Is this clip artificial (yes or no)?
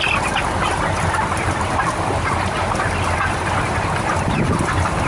no